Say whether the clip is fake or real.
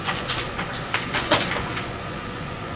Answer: fake